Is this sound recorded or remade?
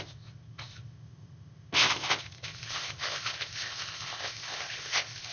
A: remade